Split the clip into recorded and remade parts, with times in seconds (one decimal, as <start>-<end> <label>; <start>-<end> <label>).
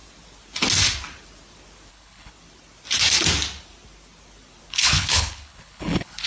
0.0-1.9 recorded; 1.9-2.3 remade; 2.3-4.7 recorded; 4.7-6.3 remade